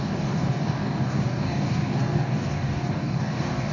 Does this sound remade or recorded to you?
remade